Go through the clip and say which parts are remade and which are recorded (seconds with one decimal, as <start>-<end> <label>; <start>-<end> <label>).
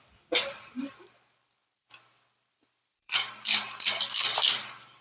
0.0-1.6 recorded; 1.6-4.6 remade; 4.6-5.0 recorded